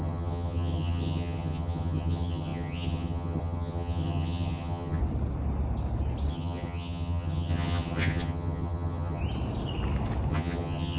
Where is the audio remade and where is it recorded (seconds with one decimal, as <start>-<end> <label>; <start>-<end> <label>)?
0.0-5.0 remade; 5.0-6.3 recorded; 6.3-9.2 remade; 9.2-10.3 recorded; 10.3-11.0 remade